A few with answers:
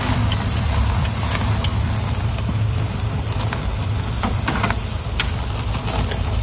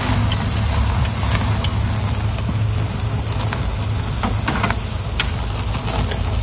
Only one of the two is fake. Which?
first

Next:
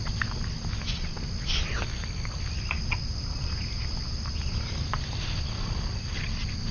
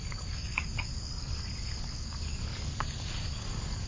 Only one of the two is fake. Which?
second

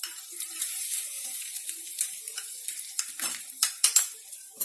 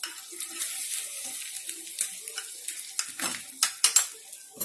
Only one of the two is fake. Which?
first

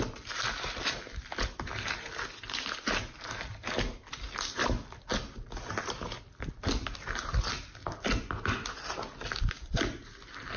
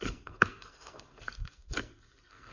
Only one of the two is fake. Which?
second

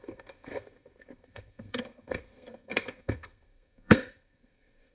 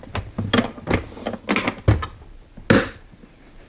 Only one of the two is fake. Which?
first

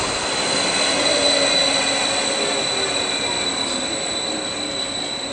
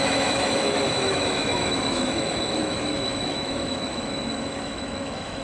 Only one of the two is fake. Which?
second